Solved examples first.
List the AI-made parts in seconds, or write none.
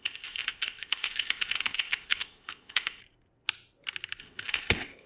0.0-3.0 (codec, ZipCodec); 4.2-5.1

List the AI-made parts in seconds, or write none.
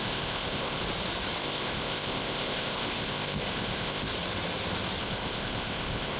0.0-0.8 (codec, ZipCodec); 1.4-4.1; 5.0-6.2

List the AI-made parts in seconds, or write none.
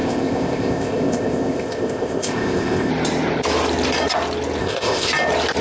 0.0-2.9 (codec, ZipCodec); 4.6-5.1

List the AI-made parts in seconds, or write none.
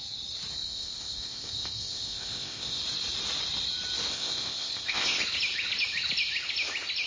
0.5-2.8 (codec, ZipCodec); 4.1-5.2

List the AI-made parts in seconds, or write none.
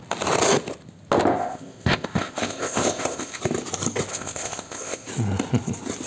1.4-3.4 (codec, ZipCodec); 4.1-5.1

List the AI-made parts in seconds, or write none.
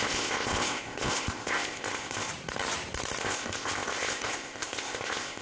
0.0-2.3 (codec, ZipCodec); 3.2-5.4